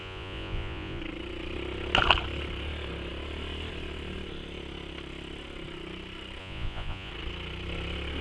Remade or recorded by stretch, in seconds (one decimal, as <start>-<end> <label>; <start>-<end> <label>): 0.0-1.0 remade; 1.0-6.4 recorded; 6.4-7.1 remade; 7.1-8.2 recorded